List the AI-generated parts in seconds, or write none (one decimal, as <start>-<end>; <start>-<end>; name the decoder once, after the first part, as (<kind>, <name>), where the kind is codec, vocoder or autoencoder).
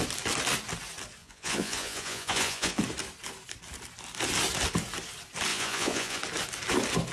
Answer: 1.2-2.8 (vocoder, Vocos); 5.5-6.2